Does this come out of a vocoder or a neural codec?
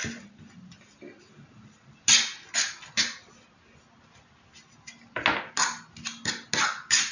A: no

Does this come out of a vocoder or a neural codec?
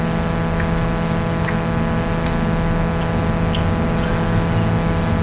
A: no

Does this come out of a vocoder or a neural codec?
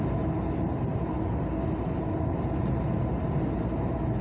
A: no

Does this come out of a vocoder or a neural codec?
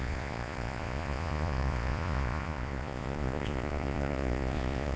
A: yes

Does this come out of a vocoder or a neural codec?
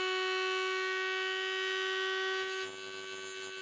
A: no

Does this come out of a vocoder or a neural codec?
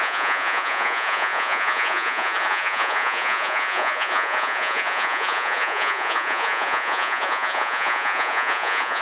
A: yes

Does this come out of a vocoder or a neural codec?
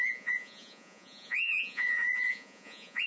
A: yes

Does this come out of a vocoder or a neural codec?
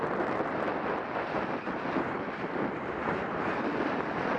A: no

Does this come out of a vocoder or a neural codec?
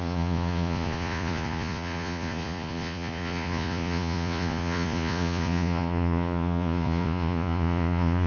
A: yes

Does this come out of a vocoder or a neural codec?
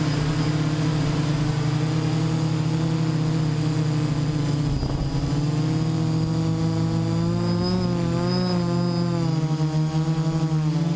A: no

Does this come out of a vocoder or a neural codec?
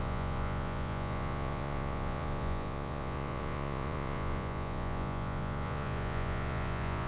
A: yes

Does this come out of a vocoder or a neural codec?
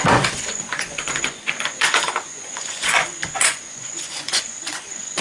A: yes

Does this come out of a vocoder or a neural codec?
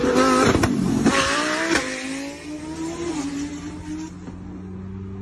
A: no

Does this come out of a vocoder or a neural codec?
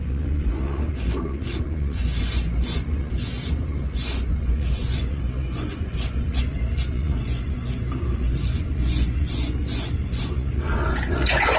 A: yes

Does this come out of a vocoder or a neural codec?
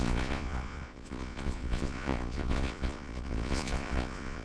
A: yes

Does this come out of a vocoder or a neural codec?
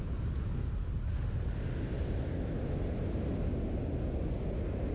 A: no